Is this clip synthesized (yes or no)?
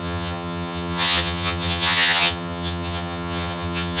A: yes